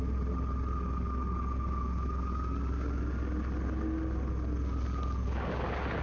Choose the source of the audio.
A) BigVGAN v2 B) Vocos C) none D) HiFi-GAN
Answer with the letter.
C